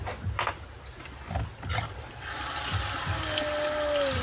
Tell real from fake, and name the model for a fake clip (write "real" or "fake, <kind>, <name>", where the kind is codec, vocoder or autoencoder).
real